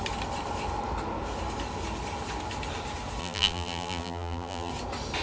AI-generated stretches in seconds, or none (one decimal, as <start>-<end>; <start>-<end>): 3.2-4.7